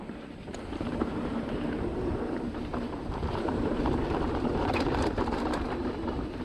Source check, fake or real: fake